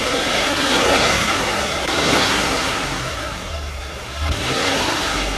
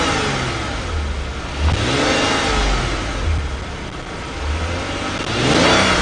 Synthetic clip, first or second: first